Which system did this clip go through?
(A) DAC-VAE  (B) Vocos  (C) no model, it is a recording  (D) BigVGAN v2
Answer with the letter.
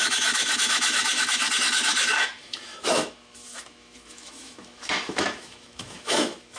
A